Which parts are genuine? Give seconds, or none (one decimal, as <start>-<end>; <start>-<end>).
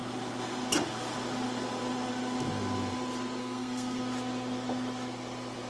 0.0-3.4; 4.0-5.7